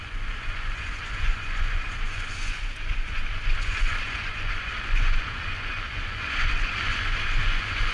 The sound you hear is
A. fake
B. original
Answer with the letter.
A